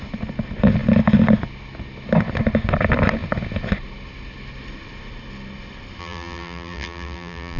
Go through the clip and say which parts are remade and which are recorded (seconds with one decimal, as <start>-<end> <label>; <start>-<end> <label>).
0.0-6.0 recorded; 6.0-7.6 remade